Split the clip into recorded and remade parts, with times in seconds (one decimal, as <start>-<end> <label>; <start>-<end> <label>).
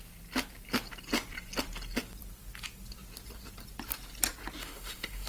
0.0-4.6 recorded; 4.6-5.3 remade